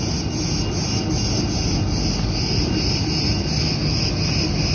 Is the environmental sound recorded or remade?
recorded